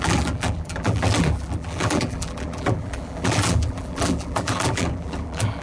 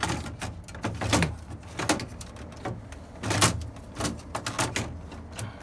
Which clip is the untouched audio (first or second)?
second